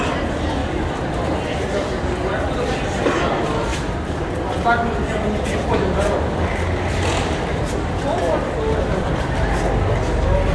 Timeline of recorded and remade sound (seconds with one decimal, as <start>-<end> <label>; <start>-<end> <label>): 0.0-10.5 recorded